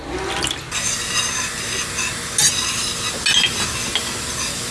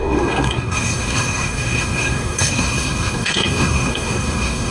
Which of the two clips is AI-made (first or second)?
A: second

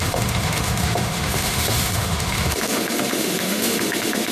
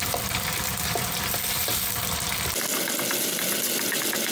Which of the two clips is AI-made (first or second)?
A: first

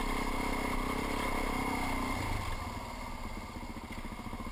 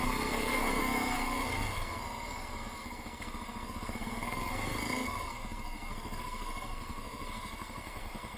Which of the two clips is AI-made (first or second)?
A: second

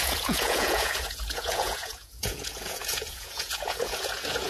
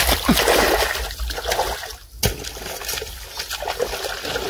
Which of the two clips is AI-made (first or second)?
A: first